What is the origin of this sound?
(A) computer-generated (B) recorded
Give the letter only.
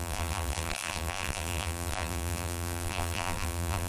A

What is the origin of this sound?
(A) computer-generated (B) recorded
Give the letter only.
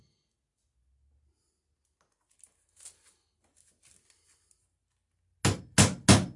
B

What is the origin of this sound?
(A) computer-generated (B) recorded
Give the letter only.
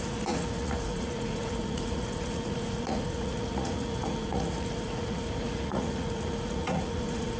A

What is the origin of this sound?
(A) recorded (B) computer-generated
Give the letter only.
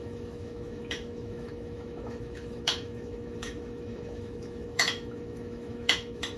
B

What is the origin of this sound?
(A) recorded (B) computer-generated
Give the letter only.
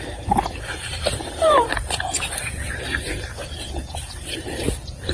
B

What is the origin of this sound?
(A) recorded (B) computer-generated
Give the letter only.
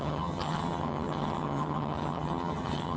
B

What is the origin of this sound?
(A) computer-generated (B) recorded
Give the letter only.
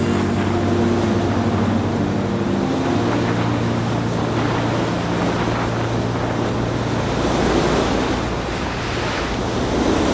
B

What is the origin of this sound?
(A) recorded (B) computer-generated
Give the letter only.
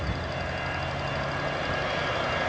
A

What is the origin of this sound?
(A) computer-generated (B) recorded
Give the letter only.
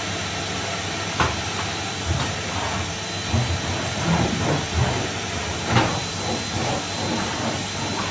B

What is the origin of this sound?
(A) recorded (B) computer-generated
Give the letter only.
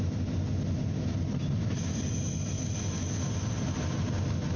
A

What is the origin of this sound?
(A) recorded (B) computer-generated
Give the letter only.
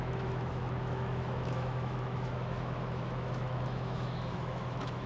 B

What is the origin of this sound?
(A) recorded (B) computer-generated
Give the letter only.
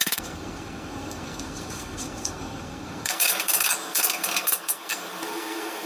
B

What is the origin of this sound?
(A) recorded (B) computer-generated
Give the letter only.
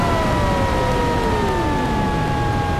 A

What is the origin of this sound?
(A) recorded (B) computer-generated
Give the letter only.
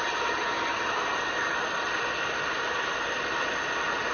A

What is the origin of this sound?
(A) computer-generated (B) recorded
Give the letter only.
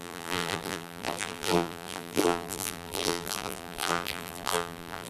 A